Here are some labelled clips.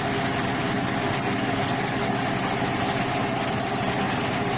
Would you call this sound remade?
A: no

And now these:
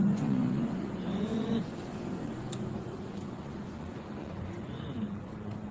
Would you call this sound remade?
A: yes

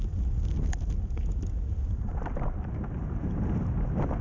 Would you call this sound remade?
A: no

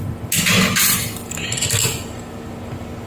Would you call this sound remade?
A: no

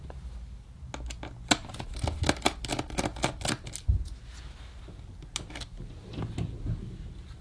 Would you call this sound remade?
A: no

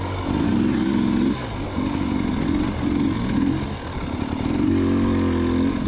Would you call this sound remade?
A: no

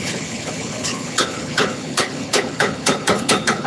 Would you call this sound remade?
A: yes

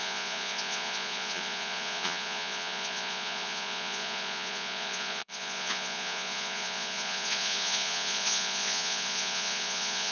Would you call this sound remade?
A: yes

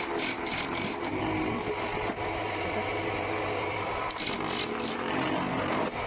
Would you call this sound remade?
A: no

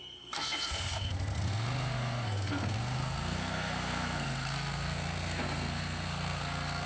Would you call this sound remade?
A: yes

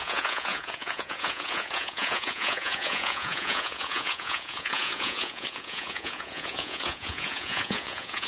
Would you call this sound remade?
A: yes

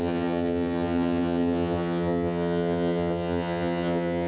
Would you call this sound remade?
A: yes